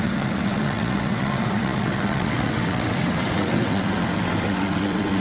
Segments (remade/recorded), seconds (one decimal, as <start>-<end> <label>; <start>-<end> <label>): 0.0-5.2 remade